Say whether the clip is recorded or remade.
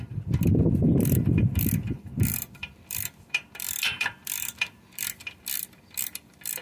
remade